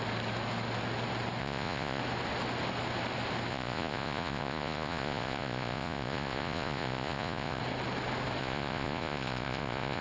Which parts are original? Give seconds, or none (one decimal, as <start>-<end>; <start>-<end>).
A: 0.0-1.4; 2.0-3.5; 7.6-8.4